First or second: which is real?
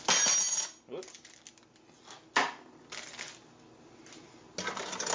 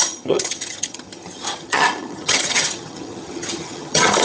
first